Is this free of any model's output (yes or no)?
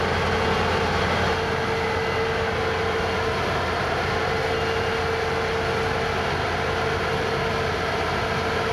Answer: yes